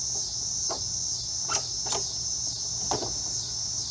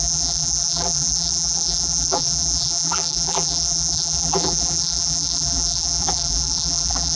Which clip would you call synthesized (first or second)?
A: second